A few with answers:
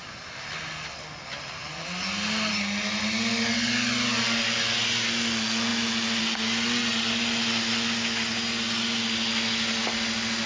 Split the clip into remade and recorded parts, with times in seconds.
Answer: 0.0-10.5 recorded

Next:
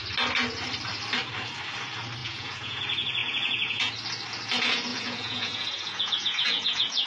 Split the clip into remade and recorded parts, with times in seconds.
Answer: 0.0-2.2 recorded; 2.2-2.8 remade; 2.8-3.2 recorded; 3.2-3.9 remade; 3.9-4.9 recorded; 4.9-7.1 remade